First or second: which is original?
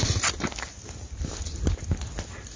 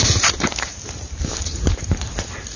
first